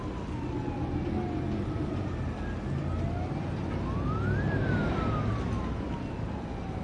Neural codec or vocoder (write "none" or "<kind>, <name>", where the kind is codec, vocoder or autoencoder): none